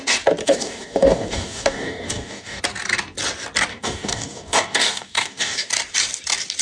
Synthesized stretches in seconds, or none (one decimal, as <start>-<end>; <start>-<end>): 0.4-2.6; 3.7-5.7